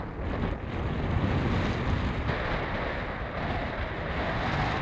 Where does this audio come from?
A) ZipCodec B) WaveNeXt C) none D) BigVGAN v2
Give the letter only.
C